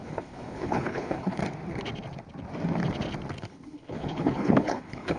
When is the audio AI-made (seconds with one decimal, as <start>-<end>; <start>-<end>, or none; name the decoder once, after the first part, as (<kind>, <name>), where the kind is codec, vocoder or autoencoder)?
0.0-1.4 (codec, HILCodec); 3.4-5.2